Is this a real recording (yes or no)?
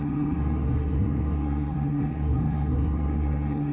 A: no